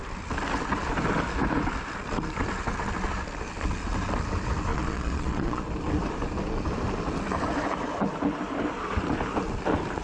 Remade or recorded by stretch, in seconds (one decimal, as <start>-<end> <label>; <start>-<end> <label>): 0.0-4.7 recorded; 4.7-5.6 remade; 5.6-10.0 recorded